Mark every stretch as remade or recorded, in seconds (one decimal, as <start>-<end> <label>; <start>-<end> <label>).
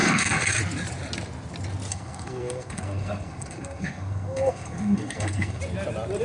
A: 0.0-0.6 remade; 0.6-1.9 recorded; 1.9-5.6 remade; 5.6-6.2 recorded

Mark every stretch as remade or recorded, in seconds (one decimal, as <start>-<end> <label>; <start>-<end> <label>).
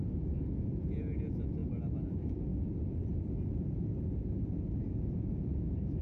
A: 0.0-1.6 remade; 1.6-2.1 recorded; 2.1-2.5 remade; 2.5-4.8 recorded; 4.8-6.0 remade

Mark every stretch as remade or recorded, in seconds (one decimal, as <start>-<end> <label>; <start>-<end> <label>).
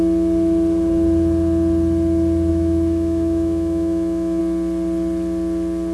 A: 0.0-2.5 recorded; 2.5-4.4 remade; 4.4-5.9 recorded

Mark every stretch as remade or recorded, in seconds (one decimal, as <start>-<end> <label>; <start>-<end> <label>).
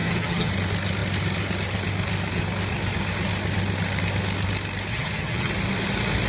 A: 0.0-0.5 remade; 0.5-4.9 recorded; 4.9-5.5 remade; 5.5-6.3 recorded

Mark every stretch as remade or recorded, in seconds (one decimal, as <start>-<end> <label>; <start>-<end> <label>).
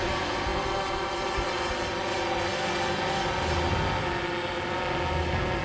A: 0.0-5.6 recorded